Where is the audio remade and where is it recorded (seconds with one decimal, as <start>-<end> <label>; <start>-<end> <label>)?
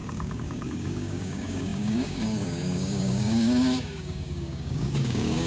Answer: 0.0-5.5 remade